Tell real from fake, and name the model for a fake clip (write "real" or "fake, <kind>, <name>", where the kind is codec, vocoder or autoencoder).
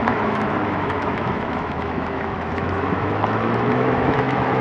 fake, autoencoder, DAC-VAE